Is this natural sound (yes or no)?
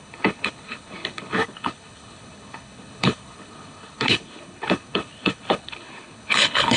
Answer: no